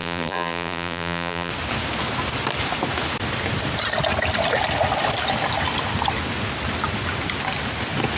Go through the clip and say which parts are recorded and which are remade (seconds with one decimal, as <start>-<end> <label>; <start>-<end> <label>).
0.0-1.5 remade; 1.5-8.2 recorded